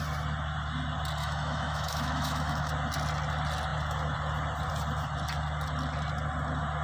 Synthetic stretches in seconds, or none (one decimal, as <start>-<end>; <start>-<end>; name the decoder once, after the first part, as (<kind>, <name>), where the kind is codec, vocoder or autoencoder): 1.2-2.7 (autoencoder, DAC-VAE)

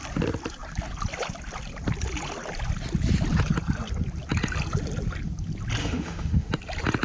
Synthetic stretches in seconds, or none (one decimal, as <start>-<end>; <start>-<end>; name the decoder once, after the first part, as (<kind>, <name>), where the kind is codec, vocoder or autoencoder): 5.8-6.5 (autoencoder, DAC-VAE)